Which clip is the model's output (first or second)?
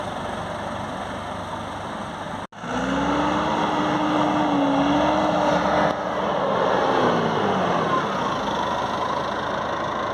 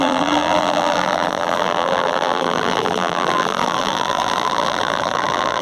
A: second